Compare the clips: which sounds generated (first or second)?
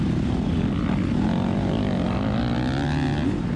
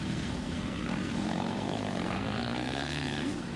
second